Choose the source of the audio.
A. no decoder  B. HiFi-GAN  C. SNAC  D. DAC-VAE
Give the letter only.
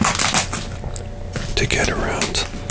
A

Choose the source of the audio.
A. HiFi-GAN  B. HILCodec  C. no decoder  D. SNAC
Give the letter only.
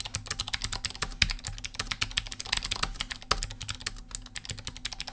C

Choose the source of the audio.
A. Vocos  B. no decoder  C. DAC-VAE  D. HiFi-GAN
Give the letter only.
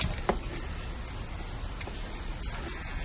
B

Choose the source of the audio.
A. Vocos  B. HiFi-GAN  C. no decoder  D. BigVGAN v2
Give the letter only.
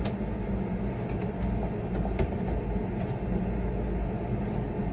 C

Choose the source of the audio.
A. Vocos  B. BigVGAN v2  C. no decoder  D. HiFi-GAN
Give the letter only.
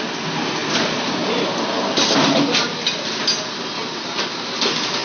C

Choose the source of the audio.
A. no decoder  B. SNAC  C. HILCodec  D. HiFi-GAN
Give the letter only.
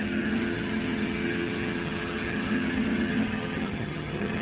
D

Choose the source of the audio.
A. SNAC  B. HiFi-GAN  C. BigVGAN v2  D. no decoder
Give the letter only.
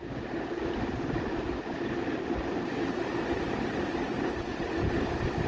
D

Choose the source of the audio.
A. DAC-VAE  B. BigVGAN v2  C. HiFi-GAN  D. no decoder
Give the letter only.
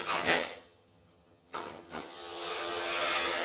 C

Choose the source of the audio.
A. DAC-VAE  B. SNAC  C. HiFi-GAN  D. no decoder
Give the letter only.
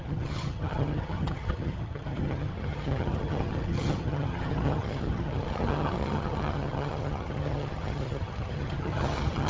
C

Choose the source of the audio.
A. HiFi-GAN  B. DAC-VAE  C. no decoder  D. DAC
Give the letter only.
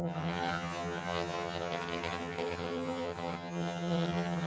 A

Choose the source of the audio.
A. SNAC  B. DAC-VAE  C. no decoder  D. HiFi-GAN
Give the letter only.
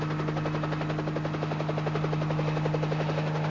C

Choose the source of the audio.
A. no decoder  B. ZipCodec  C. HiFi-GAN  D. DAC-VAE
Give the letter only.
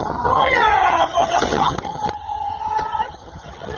C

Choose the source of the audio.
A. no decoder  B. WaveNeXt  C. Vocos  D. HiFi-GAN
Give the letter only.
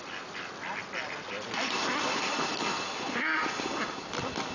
A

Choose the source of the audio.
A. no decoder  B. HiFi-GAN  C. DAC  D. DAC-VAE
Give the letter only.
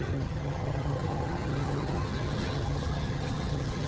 B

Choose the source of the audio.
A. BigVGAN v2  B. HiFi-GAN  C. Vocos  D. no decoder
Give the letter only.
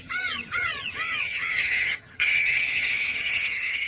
B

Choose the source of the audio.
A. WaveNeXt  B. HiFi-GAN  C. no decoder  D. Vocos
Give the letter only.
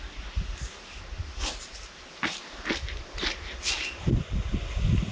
C